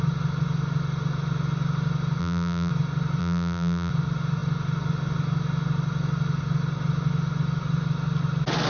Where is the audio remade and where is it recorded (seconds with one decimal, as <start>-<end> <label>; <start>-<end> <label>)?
0.0-2.2 recorded; 2.2-2.7 remade; 2.7-3.2 recorded; 3.2-3.9 remade; 3.9-8.7 recorded